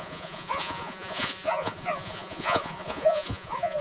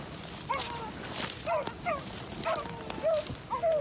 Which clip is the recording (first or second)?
second